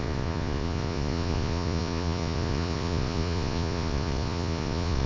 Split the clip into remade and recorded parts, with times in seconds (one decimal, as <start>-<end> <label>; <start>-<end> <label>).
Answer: 0.0-5.1 remade